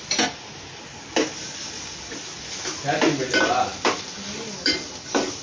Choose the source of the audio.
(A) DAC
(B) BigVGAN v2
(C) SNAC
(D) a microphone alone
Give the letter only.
D